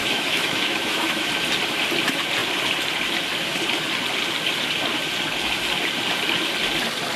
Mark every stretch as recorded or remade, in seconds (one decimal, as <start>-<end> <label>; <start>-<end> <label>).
0.0-1.3 remade; 1.3-7.2 recorded